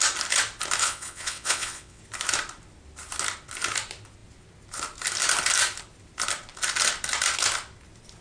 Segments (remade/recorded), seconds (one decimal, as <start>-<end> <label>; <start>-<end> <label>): 0.0-0.8 recorded; 0.8-2.0 remade; 2.0-8.2 recorded